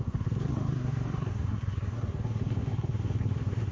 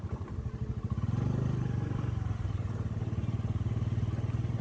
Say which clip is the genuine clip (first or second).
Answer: second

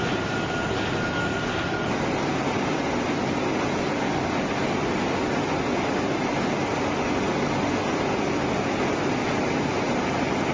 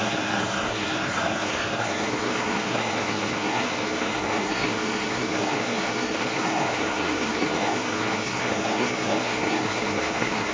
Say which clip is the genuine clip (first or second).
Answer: first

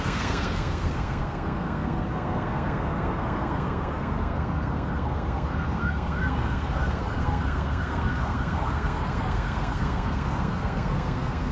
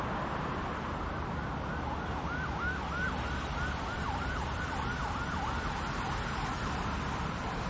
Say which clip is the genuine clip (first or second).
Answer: second